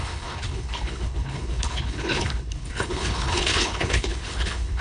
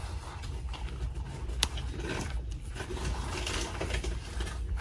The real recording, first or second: second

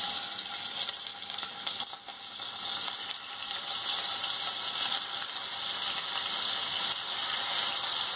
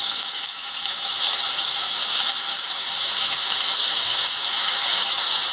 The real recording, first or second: first